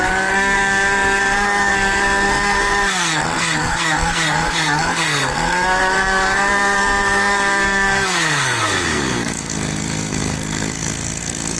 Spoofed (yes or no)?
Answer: yes